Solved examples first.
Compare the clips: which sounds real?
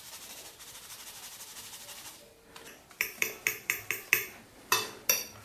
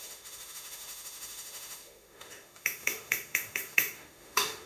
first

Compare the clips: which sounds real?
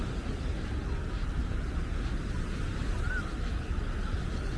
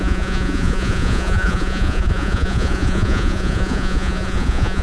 first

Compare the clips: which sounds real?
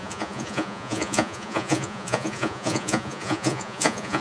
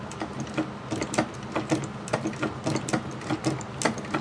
second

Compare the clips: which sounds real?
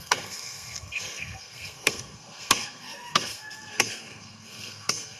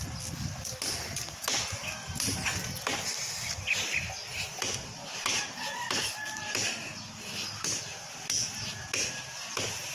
second